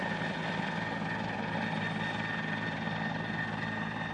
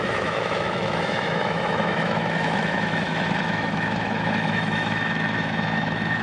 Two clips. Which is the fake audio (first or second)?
second